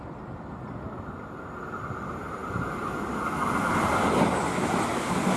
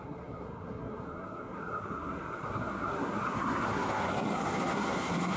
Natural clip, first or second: first